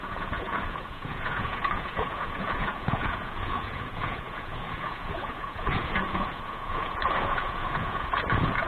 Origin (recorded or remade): remade